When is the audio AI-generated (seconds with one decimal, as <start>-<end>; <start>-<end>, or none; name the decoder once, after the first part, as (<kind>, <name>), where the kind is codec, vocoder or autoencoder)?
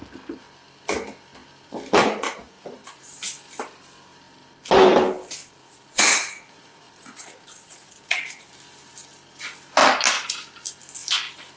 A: 2.0-3.0 (vocoder, Vocos); 5.6-8.5